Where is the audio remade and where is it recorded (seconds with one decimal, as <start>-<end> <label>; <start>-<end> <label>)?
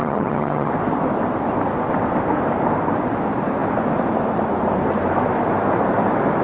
0.0-0.7 remade; 0.7-6.4 recorded